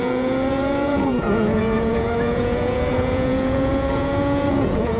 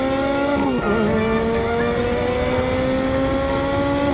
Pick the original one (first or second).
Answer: second